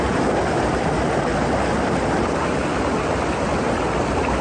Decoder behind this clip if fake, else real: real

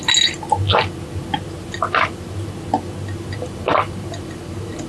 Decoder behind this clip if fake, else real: real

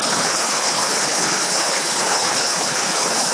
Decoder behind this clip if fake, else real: fake, codec, HILCodec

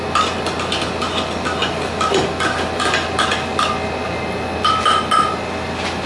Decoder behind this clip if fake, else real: real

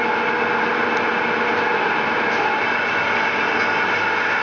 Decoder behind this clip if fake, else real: real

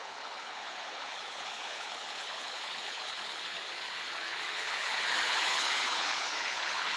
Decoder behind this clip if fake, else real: fake, codec, HILCodec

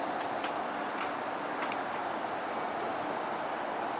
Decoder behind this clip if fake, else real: real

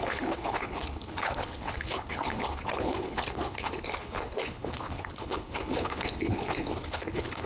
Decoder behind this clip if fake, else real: fake, codec, HILCodec